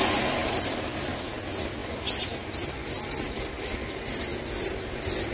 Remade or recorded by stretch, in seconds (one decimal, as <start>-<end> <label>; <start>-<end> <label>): 0.0-5.3 recorded